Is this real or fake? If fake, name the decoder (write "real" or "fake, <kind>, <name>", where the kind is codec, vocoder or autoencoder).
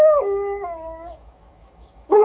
fake, codec, DAC